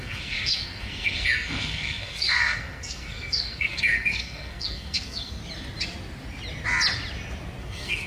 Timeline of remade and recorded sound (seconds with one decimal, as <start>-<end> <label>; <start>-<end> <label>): 0.0-5.4 remade; 5.4-7.6 recorded; 7.6-8.1 remade